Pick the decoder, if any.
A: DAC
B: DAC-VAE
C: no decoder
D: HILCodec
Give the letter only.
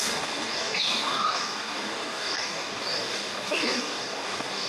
A